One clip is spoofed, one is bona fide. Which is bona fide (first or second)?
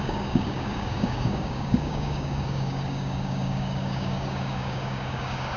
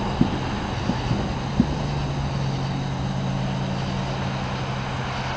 second